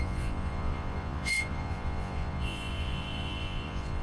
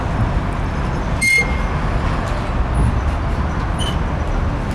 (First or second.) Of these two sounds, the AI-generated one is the first